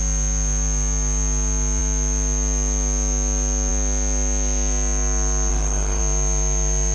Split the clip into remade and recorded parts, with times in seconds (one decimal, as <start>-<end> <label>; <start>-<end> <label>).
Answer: 0.0-5.5 recorded; 5.5-6.0 remade; 6.0-6.9 recorded